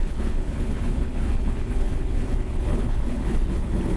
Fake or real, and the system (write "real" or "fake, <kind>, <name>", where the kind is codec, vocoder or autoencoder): fake, codec, HILCodec